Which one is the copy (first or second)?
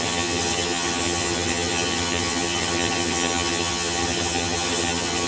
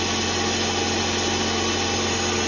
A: first